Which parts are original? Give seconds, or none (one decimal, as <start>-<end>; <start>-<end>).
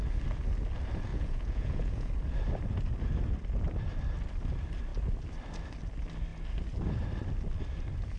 0.0-1.1; 2.1-8.2